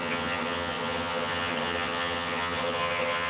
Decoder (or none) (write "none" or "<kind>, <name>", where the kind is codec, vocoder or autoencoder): vocoder, HiFi-GAN